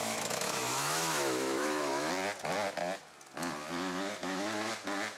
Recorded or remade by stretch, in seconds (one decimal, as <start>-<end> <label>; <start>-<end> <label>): 0.0-2.1 remade; 2.1-4.2 recorded; 4.2-4.7 remade; 4.7-5.2 recorded

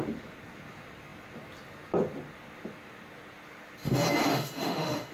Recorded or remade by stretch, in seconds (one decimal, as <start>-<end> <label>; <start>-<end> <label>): 0.0-4.2 recorded; 4.2-5.1 remade